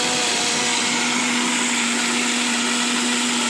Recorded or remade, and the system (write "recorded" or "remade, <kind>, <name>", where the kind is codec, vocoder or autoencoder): recorded